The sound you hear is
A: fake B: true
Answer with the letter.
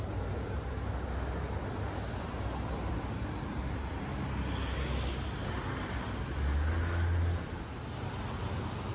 B